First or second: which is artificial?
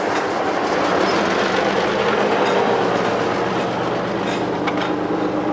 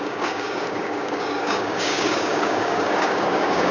second